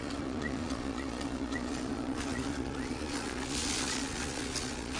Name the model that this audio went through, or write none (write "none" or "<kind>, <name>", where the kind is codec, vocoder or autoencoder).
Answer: vocoder, Vocos